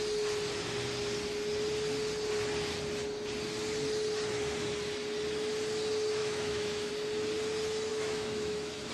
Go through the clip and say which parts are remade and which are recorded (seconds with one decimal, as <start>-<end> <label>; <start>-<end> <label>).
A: 0.0-6.2 recorded; 6.2-6.9 remade; 6.9-7.9 recorded; 7.9-8.9 remade